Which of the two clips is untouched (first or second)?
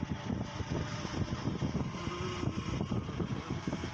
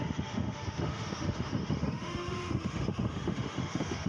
first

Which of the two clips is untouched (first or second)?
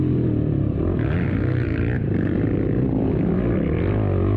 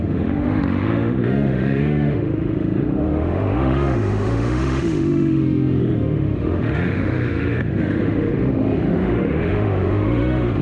first